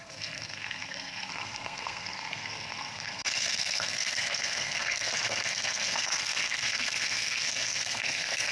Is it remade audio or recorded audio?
remade